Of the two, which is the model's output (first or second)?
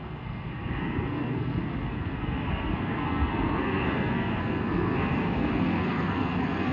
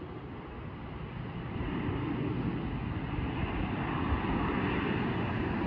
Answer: first